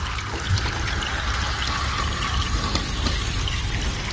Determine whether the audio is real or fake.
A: real